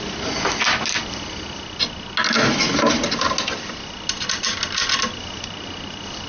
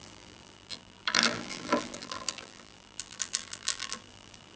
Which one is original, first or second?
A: first